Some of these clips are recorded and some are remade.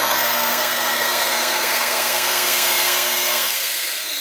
remade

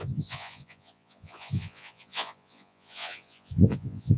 remade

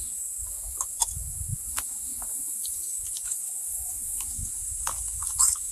remade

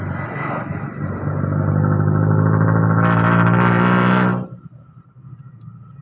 recorded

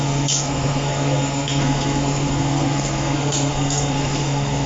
remade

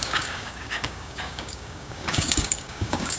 remade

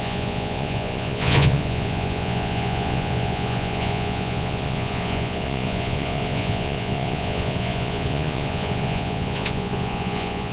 remade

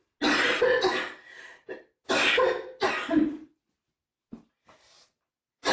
recorded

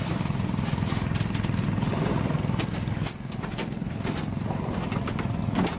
recorded